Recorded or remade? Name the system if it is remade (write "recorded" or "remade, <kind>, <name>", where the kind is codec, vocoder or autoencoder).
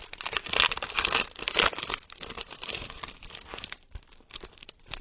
recorded